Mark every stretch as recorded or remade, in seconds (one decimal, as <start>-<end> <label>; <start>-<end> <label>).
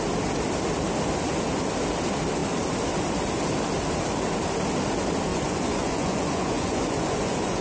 0.0-5.3 recorded; 5.3-7.6 remade